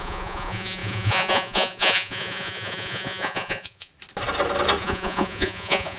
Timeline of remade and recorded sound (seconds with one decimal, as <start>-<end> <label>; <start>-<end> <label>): 0.0-3.9 remade; 3.9-4.8 recorded; 4.8-6.0 remade